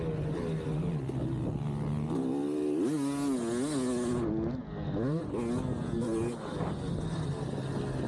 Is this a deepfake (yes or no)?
no